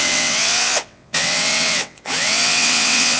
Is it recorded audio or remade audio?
remade